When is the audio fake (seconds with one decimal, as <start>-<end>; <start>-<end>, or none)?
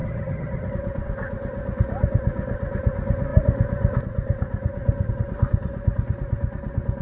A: 0.0-0.7